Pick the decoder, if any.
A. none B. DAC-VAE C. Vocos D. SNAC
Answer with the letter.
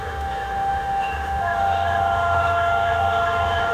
B